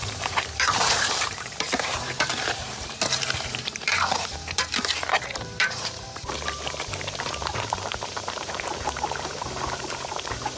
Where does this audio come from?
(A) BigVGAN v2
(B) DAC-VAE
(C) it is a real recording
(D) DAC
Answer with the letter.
A